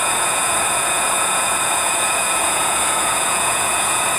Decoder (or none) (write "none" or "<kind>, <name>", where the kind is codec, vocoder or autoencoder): vocoder, Vocos